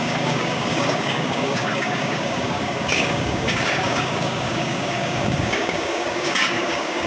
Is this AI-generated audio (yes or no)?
yes